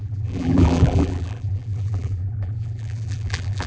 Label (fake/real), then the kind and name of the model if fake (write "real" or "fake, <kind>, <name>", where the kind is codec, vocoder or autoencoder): fake, vocoder, BigVGAN v2